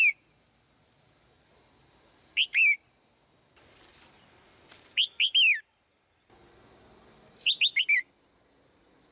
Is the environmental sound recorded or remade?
recorded